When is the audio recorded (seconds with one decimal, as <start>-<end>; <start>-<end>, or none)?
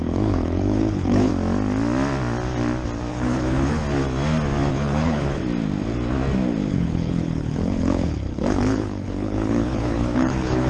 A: 1.3-3.1; 3.8-4.7; 5.4-6.7